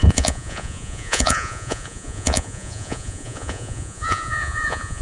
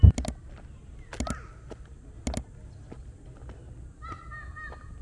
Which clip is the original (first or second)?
second